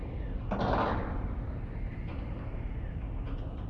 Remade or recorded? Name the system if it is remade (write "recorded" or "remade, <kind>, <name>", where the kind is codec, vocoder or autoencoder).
recorded